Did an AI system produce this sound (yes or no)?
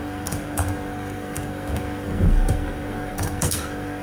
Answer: yes